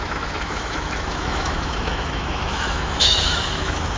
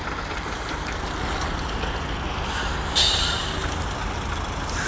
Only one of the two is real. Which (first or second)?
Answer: second